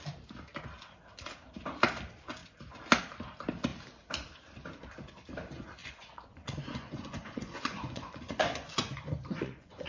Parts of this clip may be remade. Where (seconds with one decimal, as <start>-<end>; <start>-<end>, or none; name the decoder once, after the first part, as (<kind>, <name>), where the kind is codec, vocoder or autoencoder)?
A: 5.8-9.9 (vocoder, Vocos)

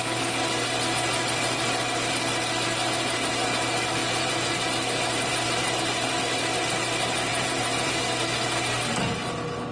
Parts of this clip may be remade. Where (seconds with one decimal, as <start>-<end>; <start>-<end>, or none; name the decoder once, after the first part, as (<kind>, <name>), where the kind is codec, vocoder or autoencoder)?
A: 4.0-4.7 (vocoder, Vocos); 7.3-8.0

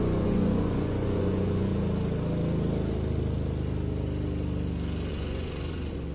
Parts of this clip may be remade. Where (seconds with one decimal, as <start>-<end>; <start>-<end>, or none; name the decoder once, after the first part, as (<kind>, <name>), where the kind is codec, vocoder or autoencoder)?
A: 0.0-1.7 (vocoder, Vocos); 5.1-6.1

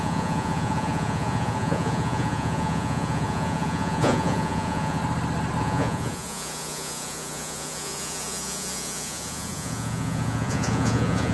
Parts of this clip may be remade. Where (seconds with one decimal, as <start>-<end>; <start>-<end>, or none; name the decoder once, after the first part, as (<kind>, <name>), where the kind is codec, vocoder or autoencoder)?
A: 0.0-5.0 (vocoder, Vocos); 5.6-11.3

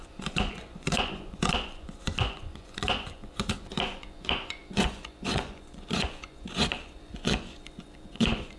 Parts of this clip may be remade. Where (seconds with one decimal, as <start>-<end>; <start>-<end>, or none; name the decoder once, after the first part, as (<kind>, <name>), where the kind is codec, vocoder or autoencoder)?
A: 0.0-8.6 (vocoder, Vocos)

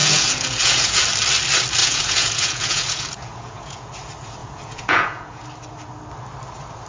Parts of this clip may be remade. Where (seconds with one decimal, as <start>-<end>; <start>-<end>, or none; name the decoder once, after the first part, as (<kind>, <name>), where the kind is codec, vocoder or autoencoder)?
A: 0.0-1.0 (vocoder, Vocos); 1.8-3.9; 4.4-5.4

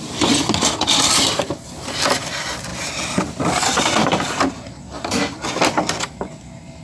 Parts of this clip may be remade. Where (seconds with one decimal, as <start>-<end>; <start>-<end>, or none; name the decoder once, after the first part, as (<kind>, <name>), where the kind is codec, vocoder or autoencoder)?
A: none